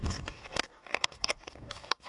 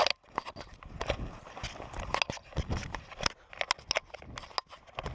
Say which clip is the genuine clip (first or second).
second